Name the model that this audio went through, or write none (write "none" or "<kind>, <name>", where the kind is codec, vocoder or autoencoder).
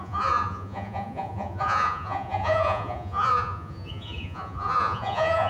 vocoder, Vocos